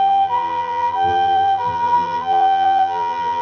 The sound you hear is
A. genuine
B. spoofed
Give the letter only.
B